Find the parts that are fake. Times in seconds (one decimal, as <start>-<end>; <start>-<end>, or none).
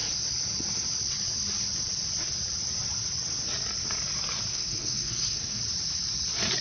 4.5-5.6